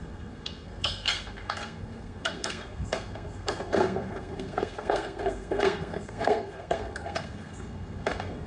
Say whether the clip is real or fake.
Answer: fake